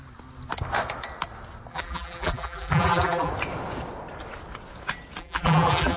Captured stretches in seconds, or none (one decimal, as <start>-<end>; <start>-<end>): 0.0-1.7; 3.3-5.2